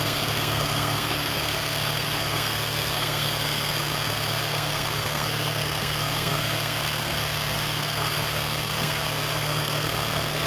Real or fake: fake